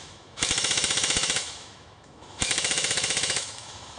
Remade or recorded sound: remade